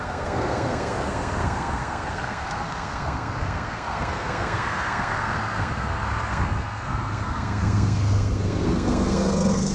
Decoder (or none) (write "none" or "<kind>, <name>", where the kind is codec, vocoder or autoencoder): codec, SNAC